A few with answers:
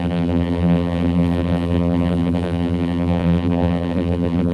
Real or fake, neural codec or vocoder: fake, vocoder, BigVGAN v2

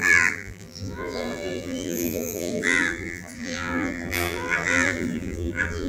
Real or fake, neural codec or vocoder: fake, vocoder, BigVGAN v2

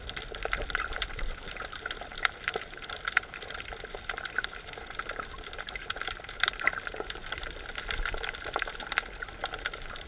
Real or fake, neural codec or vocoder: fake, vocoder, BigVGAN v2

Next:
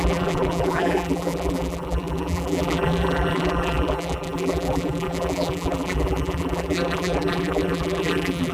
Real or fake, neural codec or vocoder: fake, vocoder, BigVGAN v2